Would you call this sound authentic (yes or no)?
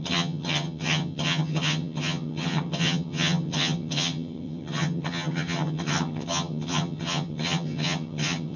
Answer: no